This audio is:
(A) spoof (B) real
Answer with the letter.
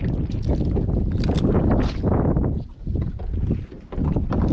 B